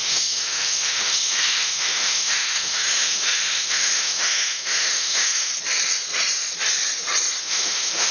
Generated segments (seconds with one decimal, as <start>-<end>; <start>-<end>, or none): 0.0-5.5; 7.4-8.1